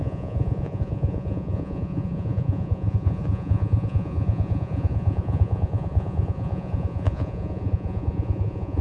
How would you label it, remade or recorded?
remade